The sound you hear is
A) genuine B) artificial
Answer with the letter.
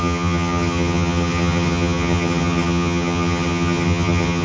B